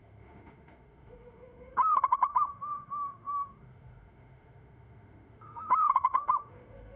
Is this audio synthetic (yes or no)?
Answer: yes